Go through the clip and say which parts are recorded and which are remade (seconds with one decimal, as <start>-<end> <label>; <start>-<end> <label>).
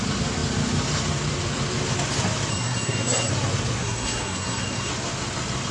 0.0-2.5 recorded; 2.5-3.3 remade; 3.3-3.8 recorded; 3.8-4.9 remade; 4.9-5.7 recorded